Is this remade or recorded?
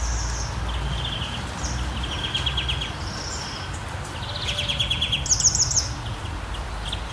recorded